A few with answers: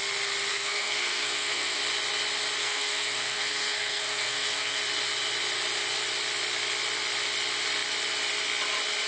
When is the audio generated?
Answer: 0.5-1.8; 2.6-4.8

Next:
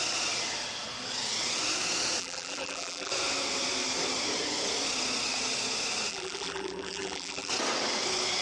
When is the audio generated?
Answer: 2.2-3.1; 6.1-7.5

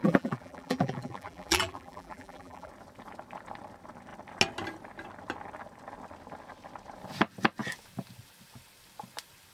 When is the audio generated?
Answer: 0.0-2.7